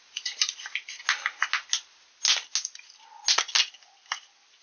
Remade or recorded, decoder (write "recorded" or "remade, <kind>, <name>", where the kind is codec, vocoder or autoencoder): recorded